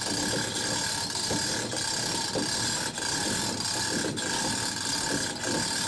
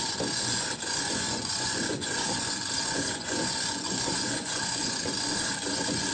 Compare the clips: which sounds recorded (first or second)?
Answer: first